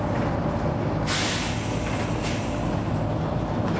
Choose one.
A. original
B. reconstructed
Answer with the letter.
A